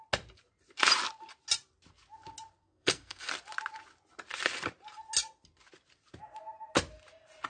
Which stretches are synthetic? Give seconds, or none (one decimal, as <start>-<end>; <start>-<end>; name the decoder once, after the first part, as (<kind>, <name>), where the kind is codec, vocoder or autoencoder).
2.6-3.3 (codec, SNAC)

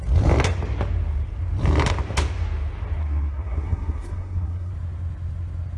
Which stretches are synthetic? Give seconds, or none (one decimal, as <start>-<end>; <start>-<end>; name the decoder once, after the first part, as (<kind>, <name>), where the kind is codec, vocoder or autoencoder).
3.0-4.7 (codec, SNAC)

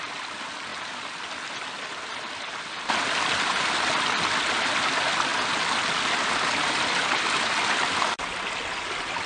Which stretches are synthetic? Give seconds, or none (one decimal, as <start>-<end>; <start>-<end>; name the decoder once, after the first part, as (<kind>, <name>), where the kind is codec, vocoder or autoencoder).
none

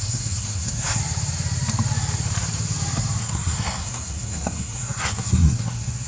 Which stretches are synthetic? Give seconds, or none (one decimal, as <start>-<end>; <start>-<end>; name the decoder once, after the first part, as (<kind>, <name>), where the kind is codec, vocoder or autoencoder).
0.0-1.0 (codec, SNAC); 3.2-6.1

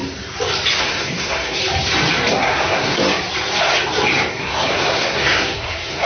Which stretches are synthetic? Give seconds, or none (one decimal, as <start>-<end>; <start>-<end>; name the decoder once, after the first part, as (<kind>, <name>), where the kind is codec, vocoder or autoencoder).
0.8-1.6 (codec, SNAC); 2.3-3.0; 4.3-6.1

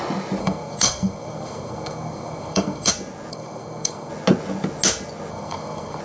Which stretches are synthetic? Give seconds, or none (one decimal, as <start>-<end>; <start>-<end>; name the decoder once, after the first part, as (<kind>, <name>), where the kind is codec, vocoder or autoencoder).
0.4-2.9 (codec, SNAC); 3.3-4.1; 5.3-6.0

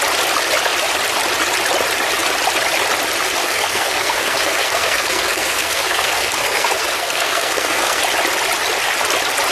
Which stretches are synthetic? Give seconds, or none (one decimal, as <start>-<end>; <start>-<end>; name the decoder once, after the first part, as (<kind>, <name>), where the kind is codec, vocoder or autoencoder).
3.4-8.0 (codec, SNAC)

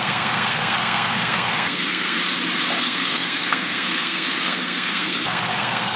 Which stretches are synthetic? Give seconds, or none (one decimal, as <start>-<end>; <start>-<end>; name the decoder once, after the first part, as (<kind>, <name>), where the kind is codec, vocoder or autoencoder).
0.0-2.2 (codec, SNAC); 2.8-6.0